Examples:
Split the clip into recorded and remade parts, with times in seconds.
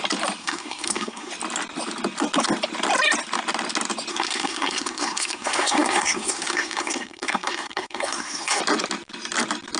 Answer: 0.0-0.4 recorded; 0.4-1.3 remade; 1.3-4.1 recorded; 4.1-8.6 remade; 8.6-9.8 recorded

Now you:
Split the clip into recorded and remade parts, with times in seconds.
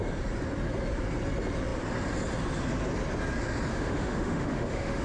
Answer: 0.0-3.7 recorded; 3.7-5.0 remade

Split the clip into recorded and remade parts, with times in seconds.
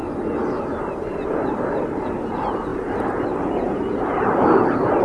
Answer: 0.0-0.6 recorded; 0.6-5.0 remade